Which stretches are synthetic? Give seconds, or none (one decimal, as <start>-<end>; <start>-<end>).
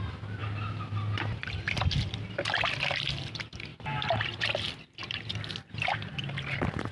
3.7-4.5